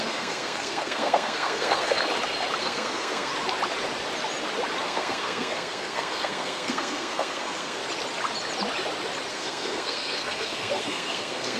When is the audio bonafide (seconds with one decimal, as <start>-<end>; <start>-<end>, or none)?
2.0-2.6; 3.3-4.8; 7.8-9.3